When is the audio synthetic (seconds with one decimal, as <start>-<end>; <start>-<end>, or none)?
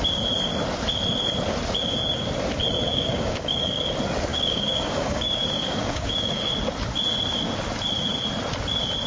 2.9-3.9; 4.3-6.5